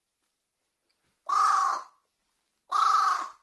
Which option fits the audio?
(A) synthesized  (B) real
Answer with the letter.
B